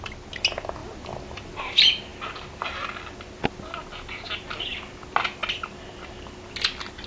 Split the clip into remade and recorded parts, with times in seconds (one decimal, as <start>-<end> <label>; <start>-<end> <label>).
0.0-7.1 recorded